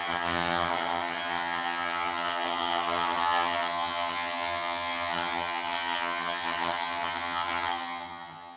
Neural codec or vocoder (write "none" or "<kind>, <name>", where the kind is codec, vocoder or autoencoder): vocoder, HiFi-GAN